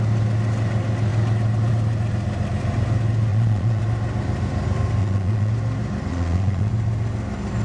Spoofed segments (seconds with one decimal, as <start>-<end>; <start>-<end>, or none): 3.3-3.8; 5.0-5.5; 6.1-6.7